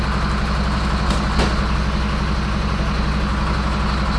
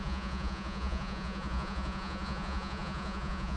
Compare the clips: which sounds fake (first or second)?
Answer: second